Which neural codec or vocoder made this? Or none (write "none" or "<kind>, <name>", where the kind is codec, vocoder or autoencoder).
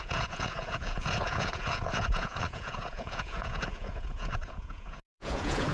vocoder, Vocos